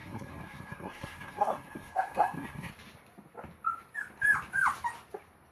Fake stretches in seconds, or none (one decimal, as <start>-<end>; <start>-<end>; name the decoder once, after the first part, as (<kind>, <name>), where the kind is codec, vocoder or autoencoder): 0.0-2.7 (codec, SNAC)